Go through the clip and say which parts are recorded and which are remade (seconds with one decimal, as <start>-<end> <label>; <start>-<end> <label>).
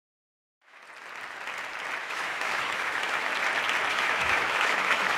0.0-0.8 remade; 0.8-2.0 recorded; 2.0-3.3 remade; 3.3-3.9 recorded; 3.9-5.2 remade